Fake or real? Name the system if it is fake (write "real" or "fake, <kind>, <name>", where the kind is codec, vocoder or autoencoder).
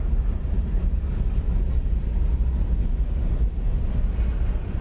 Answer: real